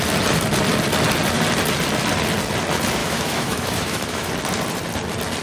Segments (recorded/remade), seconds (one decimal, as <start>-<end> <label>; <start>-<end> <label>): 0.0-3.0 recorded; 3.0-4.3 remade; 4.3-5.4 recorded